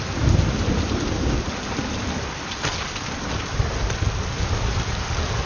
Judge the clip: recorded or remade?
recorded